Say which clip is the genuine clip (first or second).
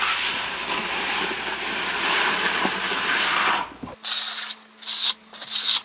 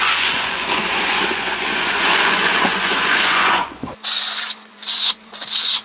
first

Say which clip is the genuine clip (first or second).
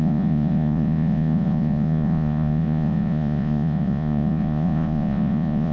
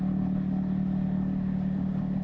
second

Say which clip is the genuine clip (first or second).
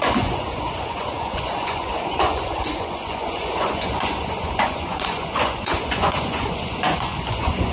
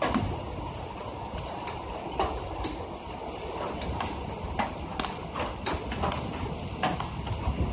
second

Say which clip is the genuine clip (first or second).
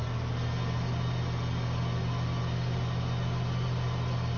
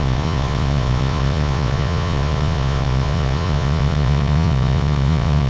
first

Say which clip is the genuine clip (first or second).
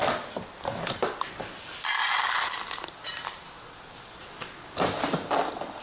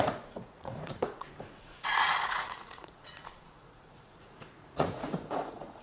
first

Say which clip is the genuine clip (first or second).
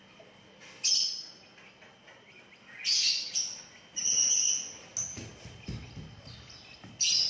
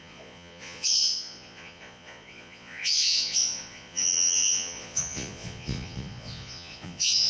first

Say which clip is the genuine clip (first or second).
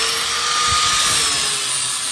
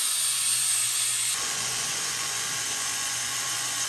first